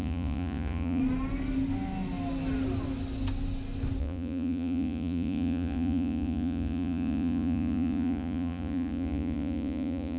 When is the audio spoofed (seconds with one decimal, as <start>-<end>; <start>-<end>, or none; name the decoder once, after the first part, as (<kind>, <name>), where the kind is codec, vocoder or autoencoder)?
0.0-1.0 (vocoder, Vocos); 4.0-10.2